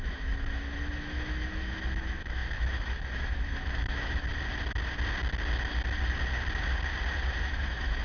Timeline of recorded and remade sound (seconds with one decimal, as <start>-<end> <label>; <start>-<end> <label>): 0.0-4.3 remade; 4.3-7.4 recorded; 7.4-8.0 remade